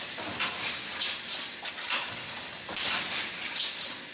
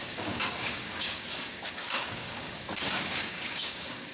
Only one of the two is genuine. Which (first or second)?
first